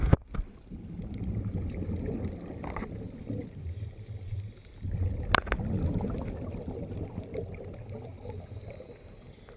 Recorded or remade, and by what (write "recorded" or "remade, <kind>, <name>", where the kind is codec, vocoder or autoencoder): recorded